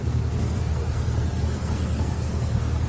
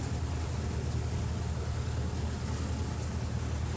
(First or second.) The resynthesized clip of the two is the first